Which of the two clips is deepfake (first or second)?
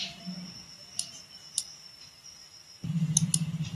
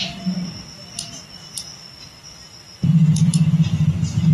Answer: first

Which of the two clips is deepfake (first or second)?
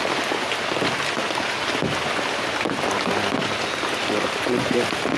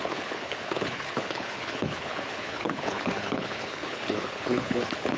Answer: second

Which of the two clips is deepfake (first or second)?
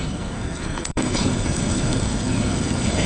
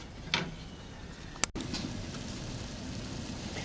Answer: first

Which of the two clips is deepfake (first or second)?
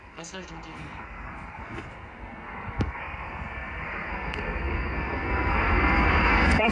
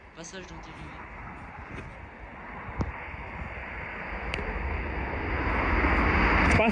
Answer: first